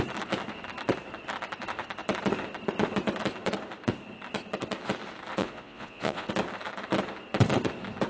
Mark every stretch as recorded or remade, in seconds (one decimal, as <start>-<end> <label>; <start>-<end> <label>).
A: 0.0-5.4 recorded; 5.4-6.3 remade; 6.3-8.1 recorded